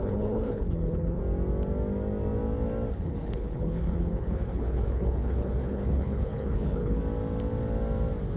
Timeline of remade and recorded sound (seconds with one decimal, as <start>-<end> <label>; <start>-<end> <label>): 0.0-1.2 remade; 1.2-2.9 recorded; 2.9-7.0 remade; 7.0-8.4 recorded